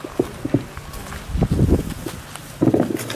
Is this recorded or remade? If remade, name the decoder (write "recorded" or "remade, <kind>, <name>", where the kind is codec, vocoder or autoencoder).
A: recorded